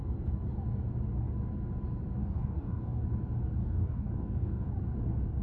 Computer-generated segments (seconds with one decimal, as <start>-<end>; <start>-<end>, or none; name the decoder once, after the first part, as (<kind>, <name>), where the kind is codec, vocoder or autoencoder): 2.2-3.0 (codec, DAC); 3.6-4.7